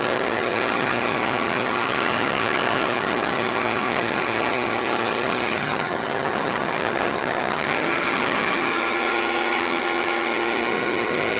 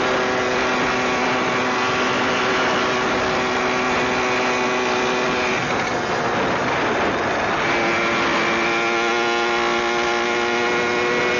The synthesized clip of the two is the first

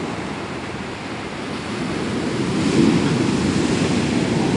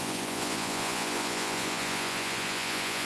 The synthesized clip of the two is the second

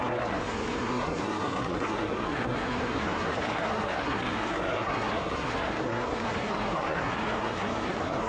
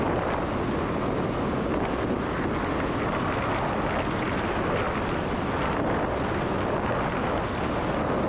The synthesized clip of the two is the first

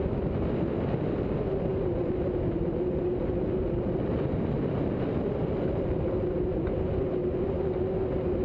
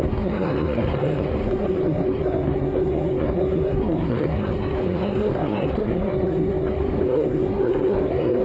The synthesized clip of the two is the second